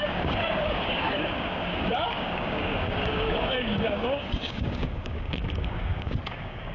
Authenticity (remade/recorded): remade